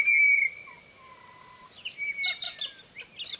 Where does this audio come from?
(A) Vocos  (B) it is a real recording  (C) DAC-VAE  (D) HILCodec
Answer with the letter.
B